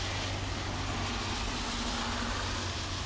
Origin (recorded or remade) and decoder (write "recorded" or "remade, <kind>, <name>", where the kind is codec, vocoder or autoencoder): recorded